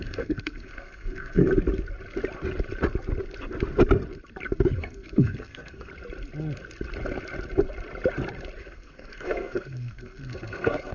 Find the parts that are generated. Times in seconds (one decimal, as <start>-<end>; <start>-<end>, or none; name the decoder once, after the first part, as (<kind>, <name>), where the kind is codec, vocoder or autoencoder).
0.0-1.4 (codec, SNAC); 4.8-5.9; 8.6-10.9